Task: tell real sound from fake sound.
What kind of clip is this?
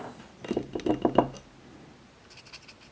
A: real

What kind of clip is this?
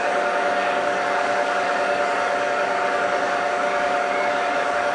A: fake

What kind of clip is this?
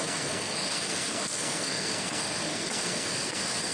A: fake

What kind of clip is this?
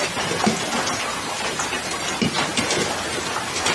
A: real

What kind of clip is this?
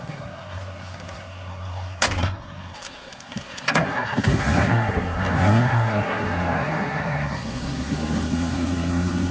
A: fake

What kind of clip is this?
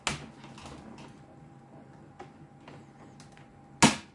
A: real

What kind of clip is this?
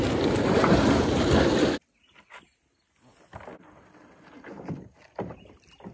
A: real